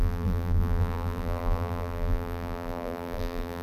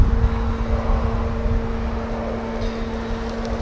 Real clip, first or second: second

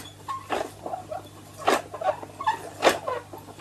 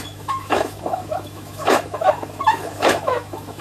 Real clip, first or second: first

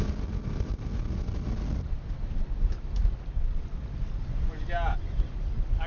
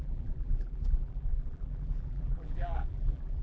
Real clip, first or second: first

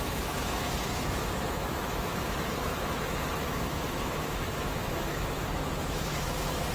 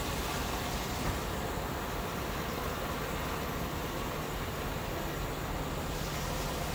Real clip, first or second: second